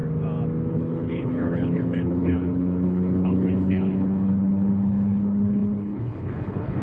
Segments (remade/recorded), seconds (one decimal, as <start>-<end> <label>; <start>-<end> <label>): 0.0-0.7 recorded; 0.7-6.8 remade